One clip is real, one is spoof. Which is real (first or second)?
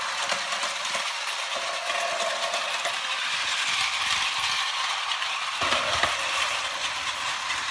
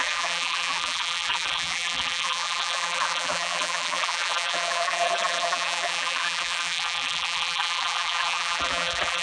first